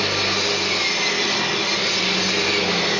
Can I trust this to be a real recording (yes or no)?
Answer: yes